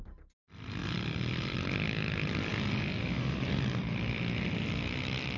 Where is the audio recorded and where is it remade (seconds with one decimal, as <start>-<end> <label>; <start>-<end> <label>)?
0.0-5.4 recorded